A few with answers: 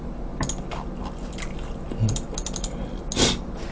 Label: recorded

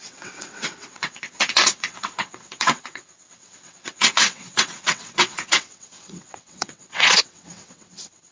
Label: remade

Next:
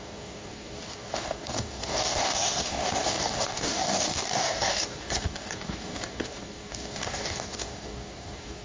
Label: remade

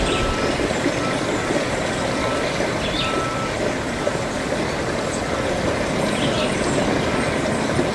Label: recorded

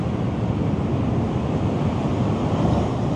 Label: recorded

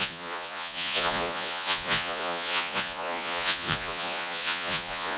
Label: remade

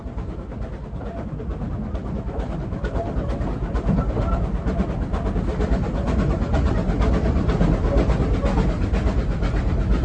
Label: recorded